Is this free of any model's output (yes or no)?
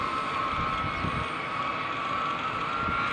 yes